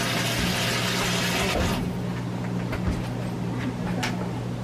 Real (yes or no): yes